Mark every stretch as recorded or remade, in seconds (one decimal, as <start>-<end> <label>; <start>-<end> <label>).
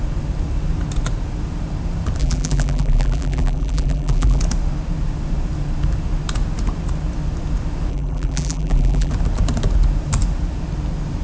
0.0-2.2 recorded; 2.2-4.4 remade; 4.4-7.9 recorded; 7.9-9.1 remade; 9.1-11.2 recorded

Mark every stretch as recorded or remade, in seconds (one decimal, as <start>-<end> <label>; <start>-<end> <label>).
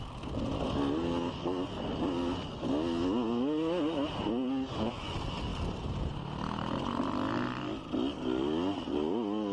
0.0-9.5 recorded